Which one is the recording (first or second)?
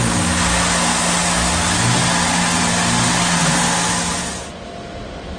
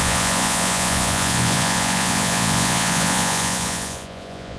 first